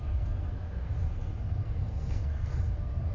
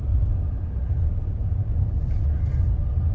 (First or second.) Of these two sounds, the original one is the second